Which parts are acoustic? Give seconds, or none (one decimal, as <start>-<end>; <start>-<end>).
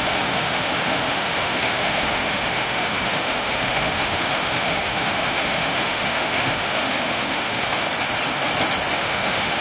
7.9-8.9